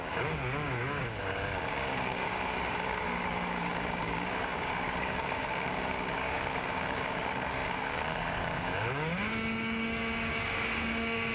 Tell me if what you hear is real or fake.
fake